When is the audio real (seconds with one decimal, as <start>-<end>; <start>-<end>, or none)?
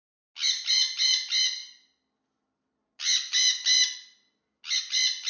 0.0-5.3